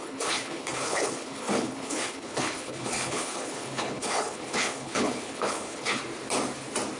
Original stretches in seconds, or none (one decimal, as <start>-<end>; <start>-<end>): 6.0-7.0